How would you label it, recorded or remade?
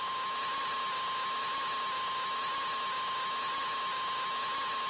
recorded